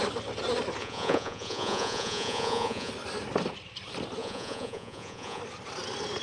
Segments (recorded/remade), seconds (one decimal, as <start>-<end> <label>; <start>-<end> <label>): 0.0-0.8 recorded; 0.8-2.9 remade; 2.9-4.2 recorded; 4.2-5.4 remade; 5.4-6.2 recorded